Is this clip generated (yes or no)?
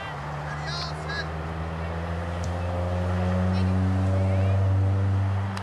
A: no